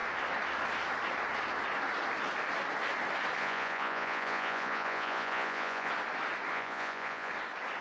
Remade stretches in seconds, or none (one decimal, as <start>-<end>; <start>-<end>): 3.4-5.9; 6.5-7.3